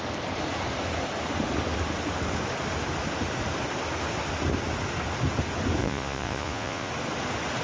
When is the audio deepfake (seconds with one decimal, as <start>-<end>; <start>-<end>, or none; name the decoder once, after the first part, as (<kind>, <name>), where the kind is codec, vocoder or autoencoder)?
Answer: 5.8-6.9 (vocoder, Vocos)